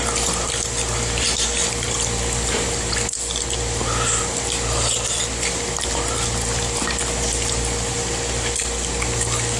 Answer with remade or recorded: recorded